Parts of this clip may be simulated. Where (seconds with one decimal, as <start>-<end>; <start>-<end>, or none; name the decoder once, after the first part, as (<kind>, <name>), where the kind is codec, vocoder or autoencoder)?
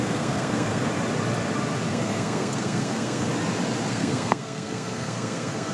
0.0-0.9 (codec, SNAC); 1.9-3.3; 3.9-5.7